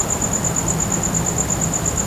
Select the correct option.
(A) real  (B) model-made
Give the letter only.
A